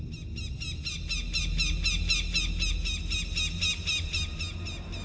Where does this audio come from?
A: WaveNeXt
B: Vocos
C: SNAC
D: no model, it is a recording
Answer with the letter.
D